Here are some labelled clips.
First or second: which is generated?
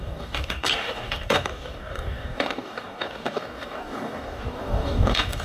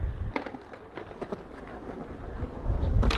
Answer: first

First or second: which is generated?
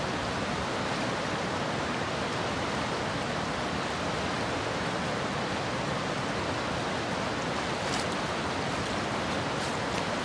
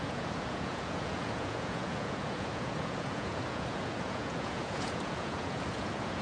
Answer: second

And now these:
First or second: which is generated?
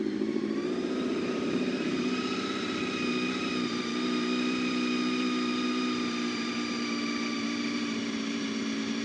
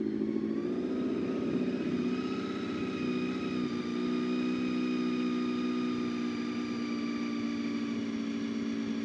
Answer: first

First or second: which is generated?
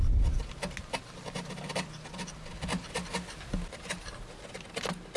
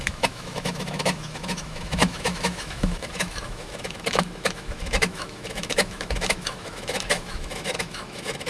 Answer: second